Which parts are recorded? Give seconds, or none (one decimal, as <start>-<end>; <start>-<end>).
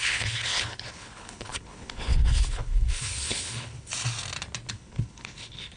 3.9-4.7